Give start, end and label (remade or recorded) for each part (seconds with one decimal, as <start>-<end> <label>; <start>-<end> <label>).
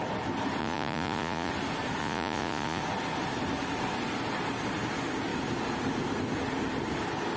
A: 0.0-0.6 recorded; 0.6-1.5 remade; 1.5-2.0 recorded; 2.0-2.8 remade; 2.8-7.4 recorded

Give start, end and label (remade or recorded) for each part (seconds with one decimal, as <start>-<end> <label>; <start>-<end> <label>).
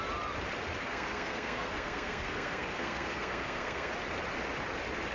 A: 0.0-0.8 recorded; 0.8-3.9 remade; 3.9-5.1 recorded